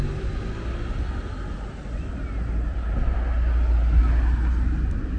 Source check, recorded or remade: recorded